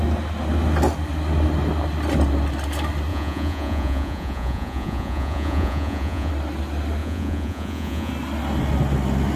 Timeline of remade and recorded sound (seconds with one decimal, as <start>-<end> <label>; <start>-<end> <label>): 0.0-3.1 recorded; 3.1-6.3 remade; 6.3-7.0 recorded; 7.0-8.1 remade; 8.1-9.4 recorded